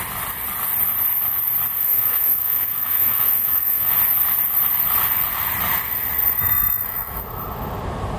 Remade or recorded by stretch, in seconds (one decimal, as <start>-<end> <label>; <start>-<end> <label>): 0.0-1.8 recorded; 1.8-3.9 remade; 3.9-6.4 recorded; 6.4-7.2 remade; 7.2-8.2 recorded